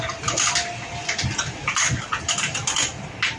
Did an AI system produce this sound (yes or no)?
no